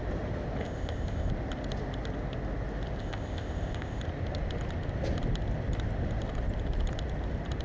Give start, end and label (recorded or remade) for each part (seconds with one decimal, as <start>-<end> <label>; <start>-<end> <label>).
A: 0.0-0.6 recorded; 0.6-1.3 remade; 1.3-3.0 recorded; 3.0-4.0 remade; 4.0-7.6 recorded